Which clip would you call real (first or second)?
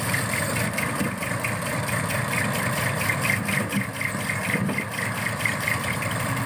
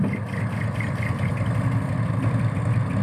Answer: second